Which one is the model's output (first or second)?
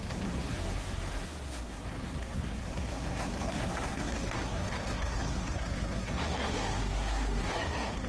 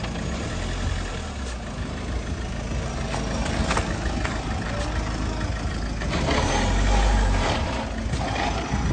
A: first